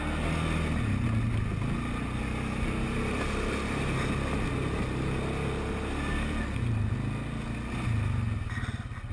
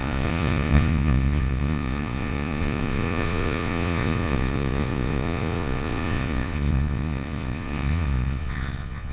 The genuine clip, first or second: first